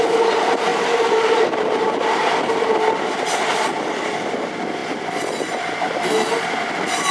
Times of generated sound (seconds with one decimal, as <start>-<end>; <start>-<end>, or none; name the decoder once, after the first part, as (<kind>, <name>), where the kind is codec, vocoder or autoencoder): none